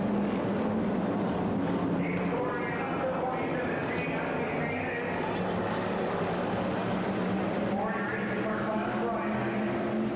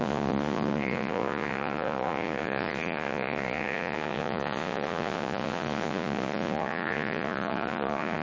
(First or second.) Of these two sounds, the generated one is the second